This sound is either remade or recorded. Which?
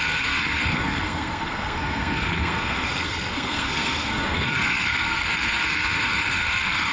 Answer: remade